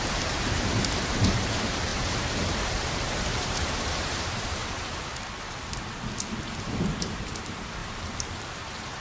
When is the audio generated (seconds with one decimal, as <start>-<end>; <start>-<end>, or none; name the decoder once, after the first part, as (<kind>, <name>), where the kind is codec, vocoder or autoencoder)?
0.0-4.6 (vocoder, BigVGAN v2); 6.8-9.0